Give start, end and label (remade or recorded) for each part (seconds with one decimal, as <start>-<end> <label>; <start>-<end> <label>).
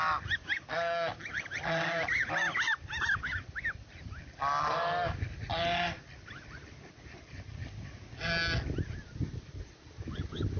0.0-10.6 recorded